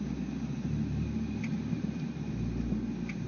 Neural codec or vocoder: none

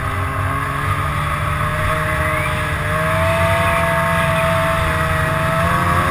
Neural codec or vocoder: none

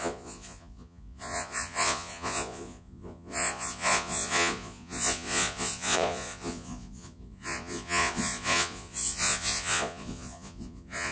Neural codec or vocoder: vocoder, Vocos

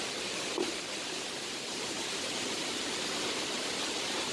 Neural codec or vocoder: vocoder, BigVGAN v2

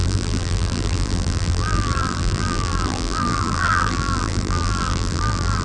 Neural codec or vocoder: vocoder, BigVGAN v2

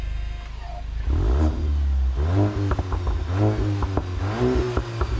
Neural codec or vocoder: none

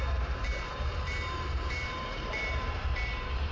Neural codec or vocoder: vocoder, BigVGAN v2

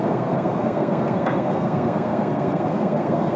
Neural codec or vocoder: codec, SNAC